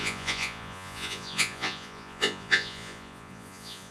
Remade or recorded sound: remade